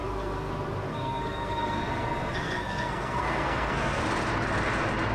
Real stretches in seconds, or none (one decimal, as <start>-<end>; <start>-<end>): 0.5-0.9; 4.0-5.1